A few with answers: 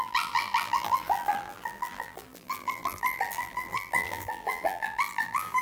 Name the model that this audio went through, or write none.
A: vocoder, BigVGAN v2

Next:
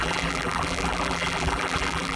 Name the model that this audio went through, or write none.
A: vocoder, BigVGAN v2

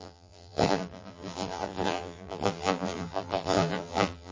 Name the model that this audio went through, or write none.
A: vocoder, BigVGAN v2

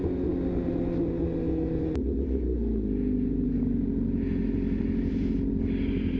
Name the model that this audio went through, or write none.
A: none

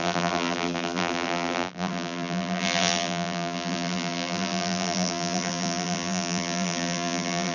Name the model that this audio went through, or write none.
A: vocoder, BigVGAN v2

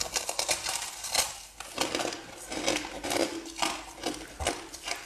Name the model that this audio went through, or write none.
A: none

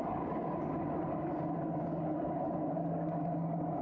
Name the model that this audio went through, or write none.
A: none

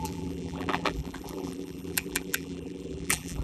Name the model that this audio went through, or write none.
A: vocoder, BigVGAN v2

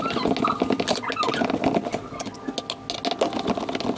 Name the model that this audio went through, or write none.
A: none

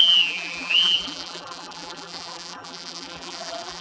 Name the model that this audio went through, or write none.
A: vocoder, BigVGAN v2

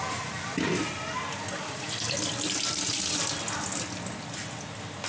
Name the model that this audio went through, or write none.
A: none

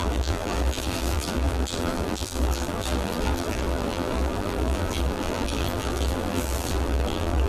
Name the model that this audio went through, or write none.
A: vocoder, BigVGAN v2